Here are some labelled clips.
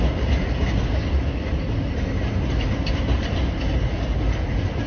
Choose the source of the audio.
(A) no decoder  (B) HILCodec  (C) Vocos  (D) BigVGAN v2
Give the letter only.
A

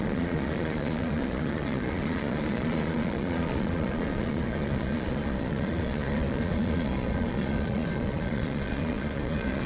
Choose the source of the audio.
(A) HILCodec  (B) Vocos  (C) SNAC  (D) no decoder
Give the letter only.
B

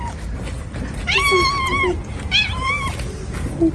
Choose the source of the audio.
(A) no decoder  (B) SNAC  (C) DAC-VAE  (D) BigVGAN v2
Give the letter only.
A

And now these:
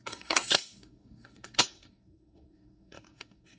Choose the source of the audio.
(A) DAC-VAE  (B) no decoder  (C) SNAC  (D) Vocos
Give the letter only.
C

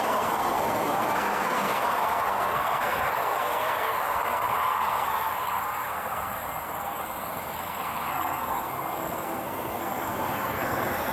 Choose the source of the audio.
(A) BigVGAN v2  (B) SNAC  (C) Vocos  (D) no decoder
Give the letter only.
B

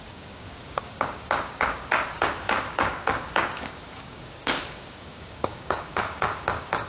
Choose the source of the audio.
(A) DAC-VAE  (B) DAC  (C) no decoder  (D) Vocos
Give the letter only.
B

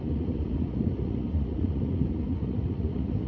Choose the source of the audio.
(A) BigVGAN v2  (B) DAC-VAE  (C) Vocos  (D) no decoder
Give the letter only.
C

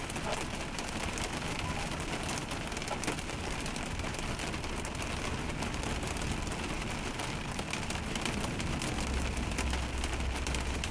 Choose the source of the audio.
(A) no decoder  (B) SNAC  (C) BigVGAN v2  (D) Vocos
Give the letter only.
C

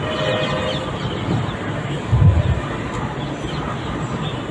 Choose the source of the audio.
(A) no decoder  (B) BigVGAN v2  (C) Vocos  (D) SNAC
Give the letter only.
A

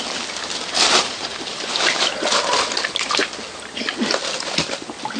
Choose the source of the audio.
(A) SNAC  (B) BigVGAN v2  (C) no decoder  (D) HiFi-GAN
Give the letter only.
C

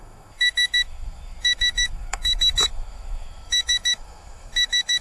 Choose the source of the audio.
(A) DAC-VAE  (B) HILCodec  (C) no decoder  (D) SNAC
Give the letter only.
A